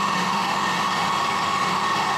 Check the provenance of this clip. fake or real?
fake